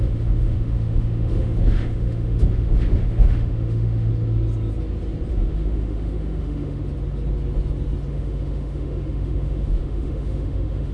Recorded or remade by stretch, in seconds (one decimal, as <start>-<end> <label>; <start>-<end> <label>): 0.0-4.1 remade; 4.1-5.3 recorded; 5.3-6.8 remade; 6.8-8.1 recorded; 8.1-10.9 remade